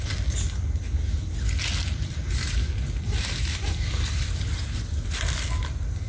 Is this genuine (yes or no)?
yes